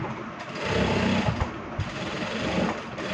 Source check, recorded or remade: recorded